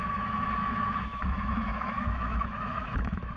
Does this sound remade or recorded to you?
remade